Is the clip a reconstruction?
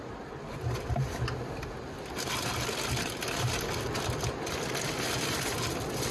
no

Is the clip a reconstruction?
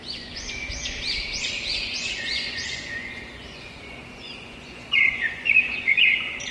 yes